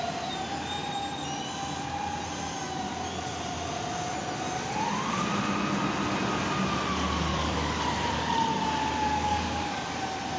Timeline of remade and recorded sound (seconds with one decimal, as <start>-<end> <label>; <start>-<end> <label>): 0.0-7.3 recorded; 7.3-7.8 remade; 7.8-9.1 recorded; 9.1-9.9 remade; 9.9-10.4 recorded